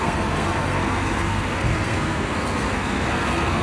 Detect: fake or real fake